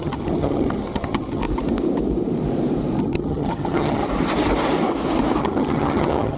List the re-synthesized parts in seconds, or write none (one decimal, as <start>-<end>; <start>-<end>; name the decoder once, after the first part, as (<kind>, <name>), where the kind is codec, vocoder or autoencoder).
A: 0.0-1.4 (vocoder, HiFi-GAN); 3.0-4.0; 5.4-6.4